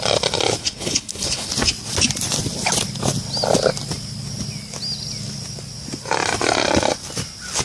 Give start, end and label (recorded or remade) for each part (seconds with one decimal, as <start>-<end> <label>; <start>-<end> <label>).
0.0-0.6 recorded; 0.6-1.5 remade; 1.5-7.6 recorded